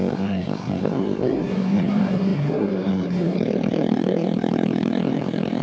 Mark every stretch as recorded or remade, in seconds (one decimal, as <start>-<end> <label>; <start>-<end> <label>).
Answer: 0.0-5.6 remade